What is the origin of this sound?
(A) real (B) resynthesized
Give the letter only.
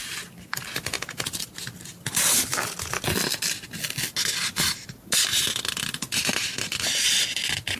A